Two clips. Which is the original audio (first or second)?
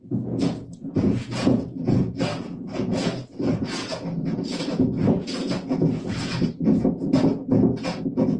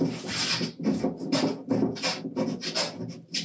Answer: second